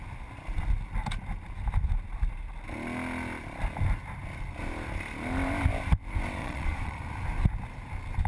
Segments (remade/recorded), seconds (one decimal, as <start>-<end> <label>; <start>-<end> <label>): 0.0-6.4 recorded; 6.4-7.0 remade; 7.0-8.3 recorded

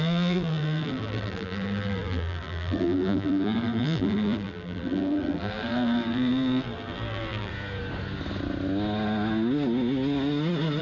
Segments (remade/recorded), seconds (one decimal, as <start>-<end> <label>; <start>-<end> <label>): 0.0-7.5 remade; 7.5-10.8 recorded